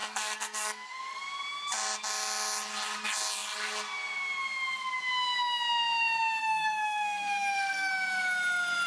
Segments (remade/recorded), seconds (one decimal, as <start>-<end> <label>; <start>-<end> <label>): 0.0-1.2 remade; 1.2-6.4 recorded; 6.4-7.9 remade; 7.9-8.9 recorded